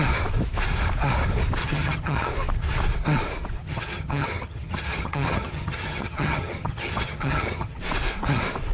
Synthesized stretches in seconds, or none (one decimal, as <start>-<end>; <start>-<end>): 1.6-2.3; 3.6-7.8